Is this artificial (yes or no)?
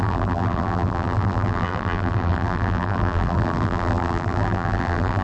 yes